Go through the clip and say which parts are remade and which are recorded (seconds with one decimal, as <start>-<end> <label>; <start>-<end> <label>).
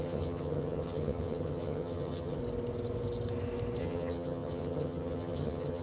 0.0-2.4 remade; 2.4-3.8 recorded; 3.8-5.8 remade